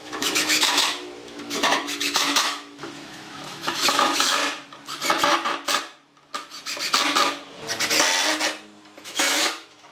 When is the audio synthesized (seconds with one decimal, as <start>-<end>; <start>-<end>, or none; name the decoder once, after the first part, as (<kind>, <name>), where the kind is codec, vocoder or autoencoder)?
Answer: 0.0-4.4 (autoencoder, DAC-VAE); 9.0-9.9